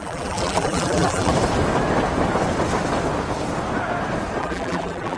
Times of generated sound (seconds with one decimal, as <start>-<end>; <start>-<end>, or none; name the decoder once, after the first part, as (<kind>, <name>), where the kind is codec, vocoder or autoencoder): 0.0-1.3 (vocoder, BigVGAN v2); 4.4-5.2